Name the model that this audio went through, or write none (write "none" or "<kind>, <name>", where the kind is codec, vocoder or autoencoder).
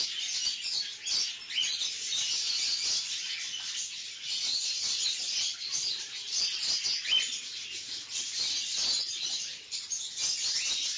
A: none